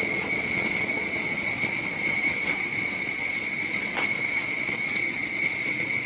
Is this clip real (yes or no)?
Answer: no